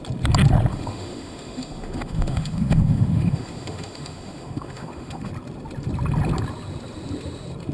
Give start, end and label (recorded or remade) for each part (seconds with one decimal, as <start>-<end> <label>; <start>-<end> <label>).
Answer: 0.0-0.7 recorded; 0.7-5.3 remade; 5.3-7.7 recorded